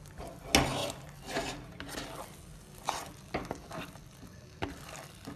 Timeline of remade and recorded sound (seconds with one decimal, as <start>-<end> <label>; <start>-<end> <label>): 0.0-5.4 recorded